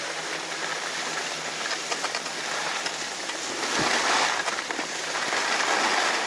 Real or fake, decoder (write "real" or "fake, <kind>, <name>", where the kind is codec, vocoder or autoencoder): real